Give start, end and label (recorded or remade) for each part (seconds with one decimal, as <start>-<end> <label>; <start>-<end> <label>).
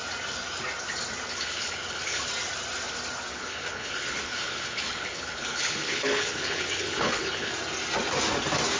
0.0-1.3 recorded; 1.3-2.2 remade; 2.2-3.3 recorded; 3.3-7.5 remade; 7.5-8.8 recorded